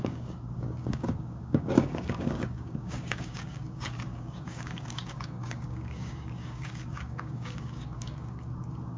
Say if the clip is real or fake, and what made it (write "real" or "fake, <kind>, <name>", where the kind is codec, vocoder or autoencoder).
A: fake, codec, DAC